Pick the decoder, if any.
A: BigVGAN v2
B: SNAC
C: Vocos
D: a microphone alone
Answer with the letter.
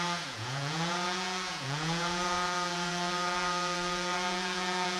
C